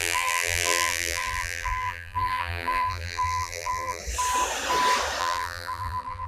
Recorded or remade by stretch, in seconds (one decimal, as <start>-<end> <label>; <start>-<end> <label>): 0.0-4.0 remade; 4.0-5.2 recorded; 5.2-6.3 remade